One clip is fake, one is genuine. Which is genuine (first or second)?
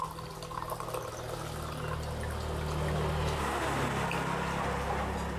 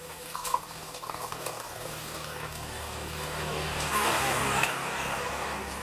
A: first